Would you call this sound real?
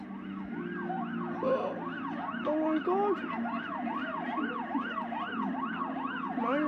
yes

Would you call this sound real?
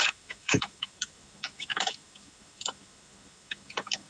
no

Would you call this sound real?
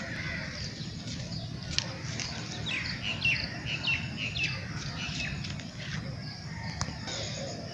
yes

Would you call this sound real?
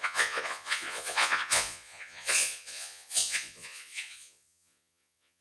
no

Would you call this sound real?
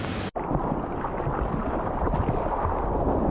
yes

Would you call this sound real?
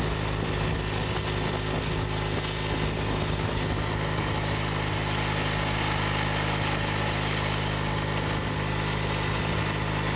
yes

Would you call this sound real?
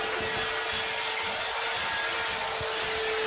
yes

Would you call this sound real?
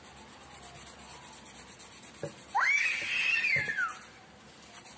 yes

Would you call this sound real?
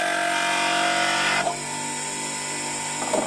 yes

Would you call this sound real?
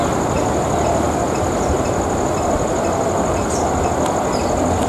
yes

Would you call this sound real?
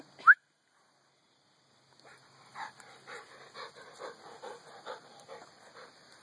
yes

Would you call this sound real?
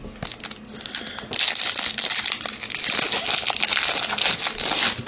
yes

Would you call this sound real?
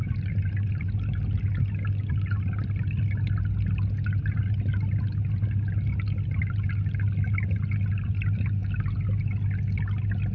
yes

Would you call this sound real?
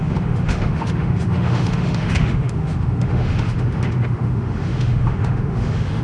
no